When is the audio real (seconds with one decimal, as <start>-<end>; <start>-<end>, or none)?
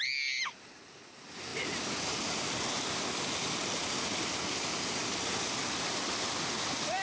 0.0-7.0